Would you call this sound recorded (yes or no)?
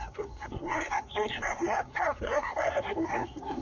no